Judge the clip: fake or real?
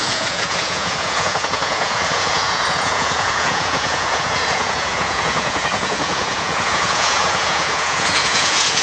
fake